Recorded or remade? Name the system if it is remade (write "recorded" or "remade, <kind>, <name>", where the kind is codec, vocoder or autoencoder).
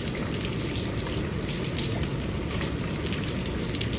recorded